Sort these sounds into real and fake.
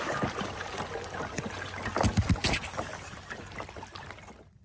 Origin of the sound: real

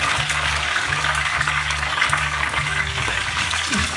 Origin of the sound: fake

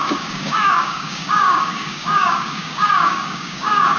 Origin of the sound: fake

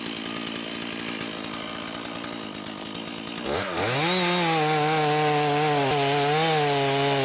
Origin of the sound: real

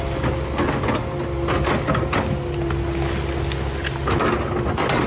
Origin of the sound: real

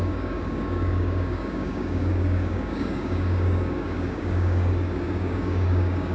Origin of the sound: fake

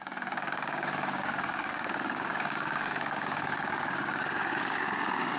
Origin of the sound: fake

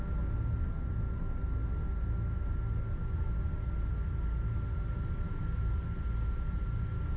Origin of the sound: real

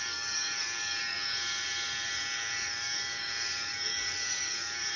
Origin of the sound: fake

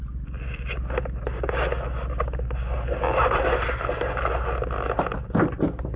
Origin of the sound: real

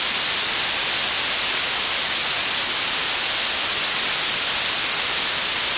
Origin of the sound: real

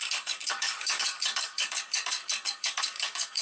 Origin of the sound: fake